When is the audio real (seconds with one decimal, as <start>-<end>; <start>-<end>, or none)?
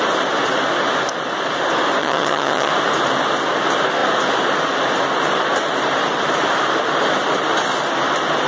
0.0-2.0; 2.7-8.5